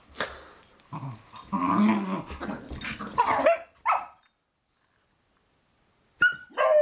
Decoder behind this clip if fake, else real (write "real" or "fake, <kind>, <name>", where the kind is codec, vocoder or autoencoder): real